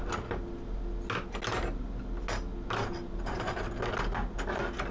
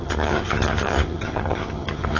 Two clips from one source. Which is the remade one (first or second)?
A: second